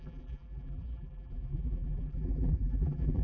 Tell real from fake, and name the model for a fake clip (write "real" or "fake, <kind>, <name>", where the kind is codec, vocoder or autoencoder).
fake, vocoder, BigVGAN v2